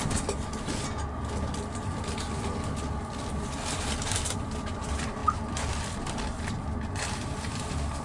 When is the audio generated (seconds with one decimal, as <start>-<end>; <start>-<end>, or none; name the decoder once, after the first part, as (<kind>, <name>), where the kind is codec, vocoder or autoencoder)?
none